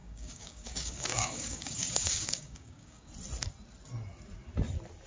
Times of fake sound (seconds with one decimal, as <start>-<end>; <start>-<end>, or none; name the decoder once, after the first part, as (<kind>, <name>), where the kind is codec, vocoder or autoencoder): 0.0-3.1 (codec, DAC)